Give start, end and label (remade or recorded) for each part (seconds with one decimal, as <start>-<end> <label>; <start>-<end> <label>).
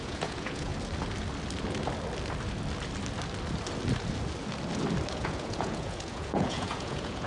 0.0-0.7 remade; 0.7-5.1 recorded; 5.1-7.3 remade